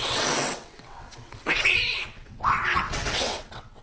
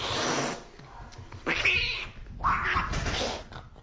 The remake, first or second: first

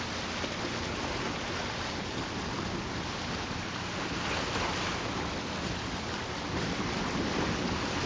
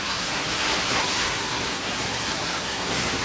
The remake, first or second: second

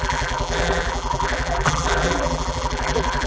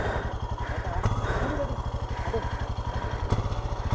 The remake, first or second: first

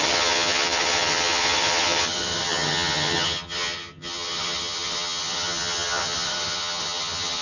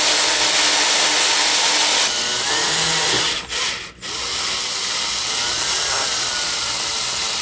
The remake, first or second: first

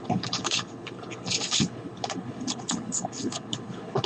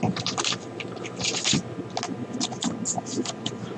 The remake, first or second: first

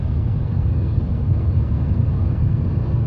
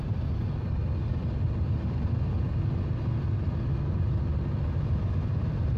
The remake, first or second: first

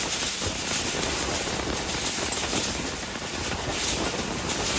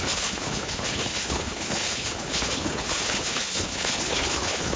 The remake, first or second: second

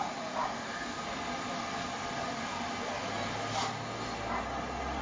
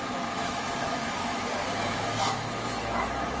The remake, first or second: second